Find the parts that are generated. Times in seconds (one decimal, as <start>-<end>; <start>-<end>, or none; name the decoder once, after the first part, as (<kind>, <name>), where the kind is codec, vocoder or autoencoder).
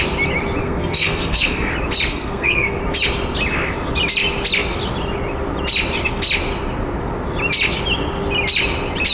0.6-1.7 (codec, SNAC); 2.1-2.8